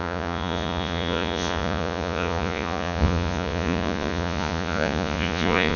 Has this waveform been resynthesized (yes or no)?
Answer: yes